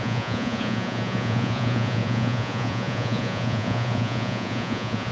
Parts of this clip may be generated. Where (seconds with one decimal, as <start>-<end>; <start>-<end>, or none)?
0.0-5.1